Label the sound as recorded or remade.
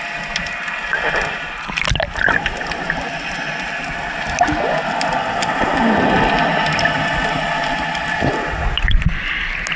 recorded